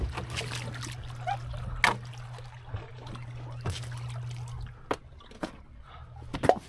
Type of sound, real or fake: real